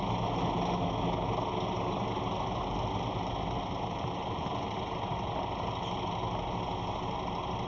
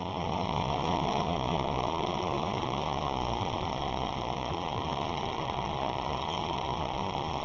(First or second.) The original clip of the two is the first